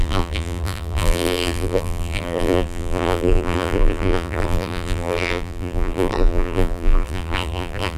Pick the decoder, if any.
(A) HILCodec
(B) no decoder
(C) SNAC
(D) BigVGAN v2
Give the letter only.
D